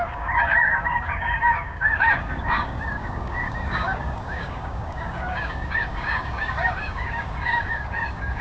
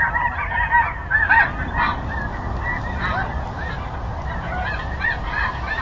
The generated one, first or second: first